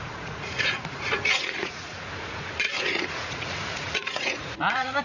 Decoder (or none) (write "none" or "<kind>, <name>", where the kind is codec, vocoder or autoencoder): vocoder, Vocos